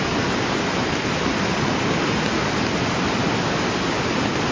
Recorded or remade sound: recorded